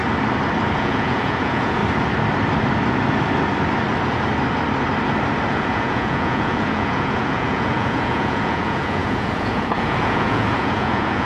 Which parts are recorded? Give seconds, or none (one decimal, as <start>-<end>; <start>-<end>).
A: 0.0-0.8; 1.8-5.5